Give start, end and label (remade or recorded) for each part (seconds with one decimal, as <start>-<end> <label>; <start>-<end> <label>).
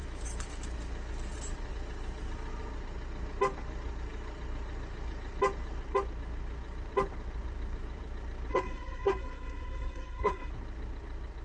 0.0-8.5 recorded; 8.5-10.5 remade; 10.5-11.4 recorded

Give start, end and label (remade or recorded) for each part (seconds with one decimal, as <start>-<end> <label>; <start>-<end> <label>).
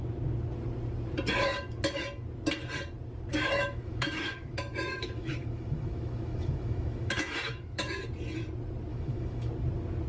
0.0-3.3 recorded; 3.3-8.0 remade; 8.0-8.9 recorded; 8.9-9.5 remade; 9.5-10.1 recorded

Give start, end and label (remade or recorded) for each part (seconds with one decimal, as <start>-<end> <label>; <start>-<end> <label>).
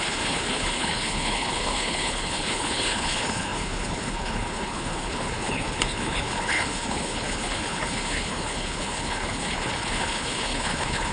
0.0-11.1 remade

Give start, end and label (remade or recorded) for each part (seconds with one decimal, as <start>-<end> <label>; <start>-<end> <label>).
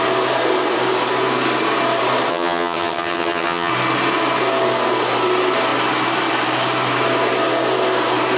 0.0-2.3 recorded; 2.3-3.7 remade; 3.7-8.4 recorded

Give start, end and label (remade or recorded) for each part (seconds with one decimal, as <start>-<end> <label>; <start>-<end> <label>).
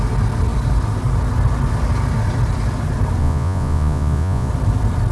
0.0-3.2 recorded; 3.2-4.5 remade; 4.5-5.1 recorded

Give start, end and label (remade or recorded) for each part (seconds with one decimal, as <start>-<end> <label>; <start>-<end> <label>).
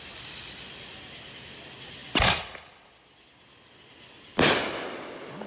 0.0-5.5 recorded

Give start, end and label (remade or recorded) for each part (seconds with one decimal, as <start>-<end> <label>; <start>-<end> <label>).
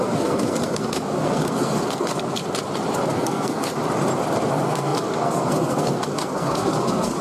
0.0-2.4 remade; 2.4-3.1 recorded; 3.1-3.7 remade; 3.7-4.5 recorded; 4.5-7.2 remade